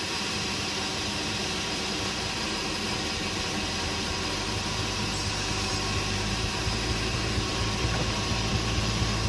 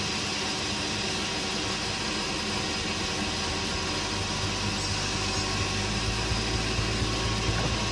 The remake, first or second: first